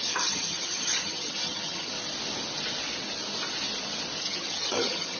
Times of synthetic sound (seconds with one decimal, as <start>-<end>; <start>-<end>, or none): 0.0-1.9; 4.2-5.2